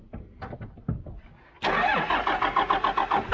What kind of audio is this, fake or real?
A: real